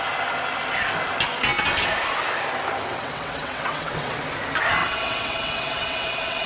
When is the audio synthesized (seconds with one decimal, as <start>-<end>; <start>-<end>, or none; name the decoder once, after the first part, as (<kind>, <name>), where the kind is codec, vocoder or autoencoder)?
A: 2.9-4.2 (vocoder, WaveNeXt); 4.8-6.5